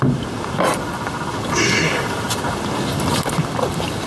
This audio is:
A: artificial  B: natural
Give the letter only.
B